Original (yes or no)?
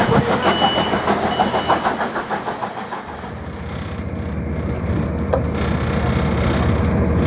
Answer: yes